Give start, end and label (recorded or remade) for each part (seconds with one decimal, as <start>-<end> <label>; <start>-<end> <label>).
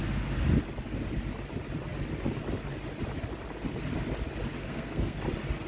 0.0-4.6 recorded; 4.6-5.2 remade; 5.2-5.7 recorded